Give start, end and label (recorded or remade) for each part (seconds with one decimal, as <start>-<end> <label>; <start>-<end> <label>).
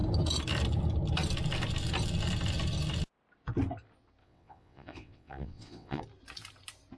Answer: 0.0-4.2 recorded; 4.2-6.0 remade; 6.0-7.0 recorded